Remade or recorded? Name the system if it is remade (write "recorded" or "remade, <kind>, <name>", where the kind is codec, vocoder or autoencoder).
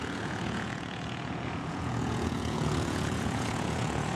remade, vocoder, Vocos